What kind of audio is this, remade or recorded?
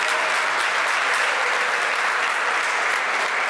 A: recorded